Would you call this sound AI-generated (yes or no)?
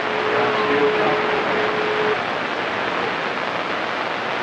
no